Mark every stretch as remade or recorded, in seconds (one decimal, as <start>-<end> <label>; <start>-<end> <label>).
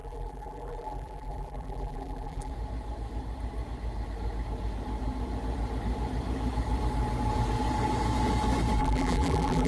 0.0-2.5 remade; 2.5-8.8 recorded; 8.8-9.7 remade